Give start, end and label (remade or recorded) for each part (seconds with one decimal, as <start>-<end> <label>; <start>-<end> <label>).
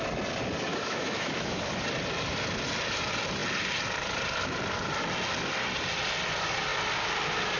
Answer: 0.0-0.7 recorded; 0.7-1.7 remade; 1.7-7.6 recorded